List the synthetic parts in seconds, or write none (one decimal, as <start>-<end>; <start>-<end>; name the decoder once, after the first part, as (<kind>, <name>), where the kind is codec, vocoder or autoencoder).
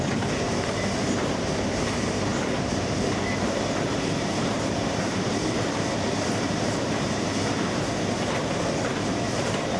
0.0-9.8 (vocoder, BigVGAN v2)